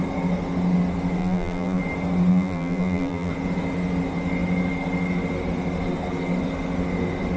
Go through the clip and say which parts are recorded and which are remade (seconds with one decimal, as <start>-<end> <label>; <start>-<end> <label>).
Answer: 0.0-1.2 recorded; 1.2-1.8 remade; 1.8-2.3 recorded; 2.3-3.3 remade; 3.3-7.4 recorded